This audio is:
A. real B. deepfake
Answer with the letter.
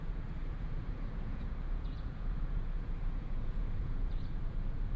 B